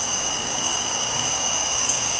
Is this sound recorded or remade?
remade